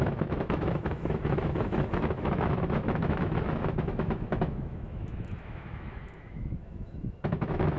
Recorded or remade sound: remade